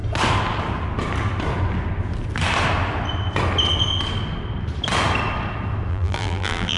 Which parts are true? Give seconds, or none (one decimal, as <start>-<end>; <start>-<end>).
0.0-5.9